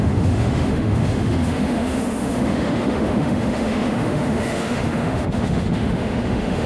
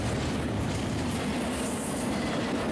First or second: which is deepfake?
first